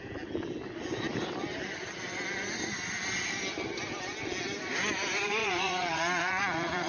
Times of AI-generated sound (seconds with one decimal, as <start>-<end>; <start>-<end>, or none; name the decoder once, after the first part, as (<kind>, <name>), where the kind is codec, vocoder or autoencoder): 5.4-6.9 (vocoder, Vocos)